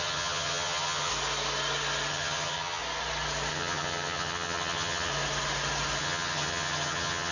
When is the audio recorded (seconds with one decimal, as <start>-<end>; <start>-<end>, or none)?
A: 1.1-2.1; 2.8-3.5; 5.1-6.0